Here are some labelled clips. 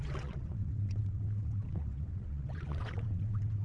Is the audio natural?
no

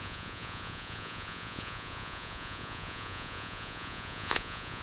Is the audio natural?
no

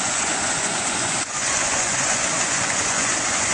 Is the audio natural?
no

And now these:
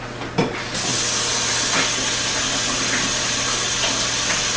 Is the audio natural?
yes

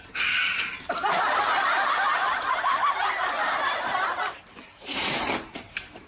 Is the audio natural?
no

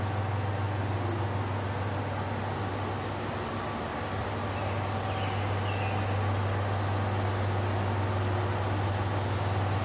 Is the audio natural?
yes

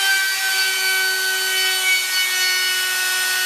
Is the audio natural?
yes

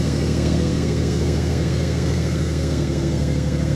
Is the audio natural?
no